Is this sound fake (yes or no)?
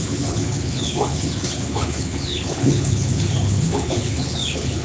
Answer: yes